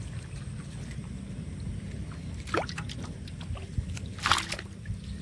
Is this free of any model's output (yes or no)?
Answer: yes